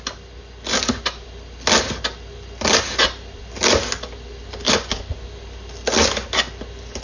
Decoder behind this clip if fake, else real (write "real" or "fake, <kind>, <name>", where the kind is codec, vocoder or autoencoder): real